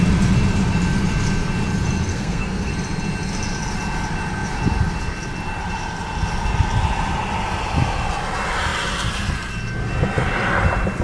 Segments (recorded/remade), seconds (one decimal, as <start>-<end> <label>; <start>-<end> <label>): 0.0-2.1 recorded; 2.1-2.7 remade; 2.7-11.0 recorded

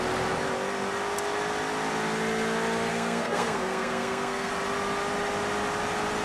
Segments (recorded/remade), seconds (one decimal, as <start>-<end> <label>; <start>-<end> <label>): 0.0-2.9 recorded; 2.9-4.5 remade; 4.5-6.2 recorded

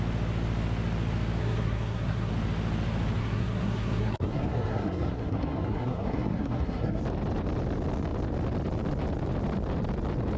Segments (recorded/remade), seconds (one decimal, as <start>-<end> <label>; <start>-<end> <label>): 0.0-1.4 recorded; 1.4-2.3 remade; 2.3-3.2 recorded; 3.2-7.0 remade; 7.0-10.4 recorded

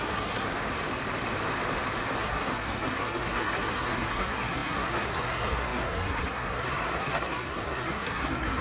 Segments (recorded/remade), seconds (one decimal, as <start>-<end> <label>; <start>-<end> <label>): 0.0-0.5 remade; 0.5-2.2 recorded; 2.2-8.6 remade

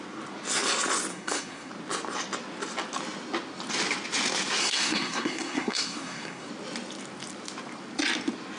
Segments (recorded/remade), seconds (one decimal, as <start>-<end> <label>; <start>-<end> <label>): 0.0-1.1 recorded; 1.1-1.7 remade; 1.7-4.6 recorded; 4.6-6.5 remade; 6.5-8.6 recorded

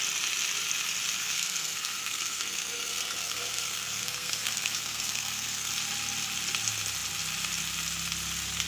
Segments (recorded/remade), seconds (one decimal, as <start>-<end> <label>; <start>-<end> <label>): 0.0-1.2 recorded; 1.2-5.7 remade; 5.7-8.7 recorded

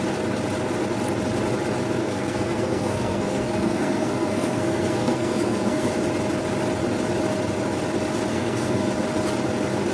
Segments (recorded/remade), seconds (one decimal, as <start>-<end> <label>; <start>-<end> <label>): 0.0-2.0 recorded; 2.0-5.9 remade; 5.9-8.3 recorded; 8.3-8.9 remade; 8.9-9.9 recorded